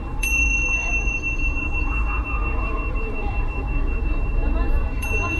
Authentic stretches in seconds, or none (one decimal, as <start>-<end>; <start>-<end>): none